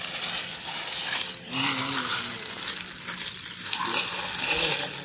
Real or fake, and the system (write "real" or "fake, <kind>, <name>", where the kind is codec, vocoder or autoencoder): real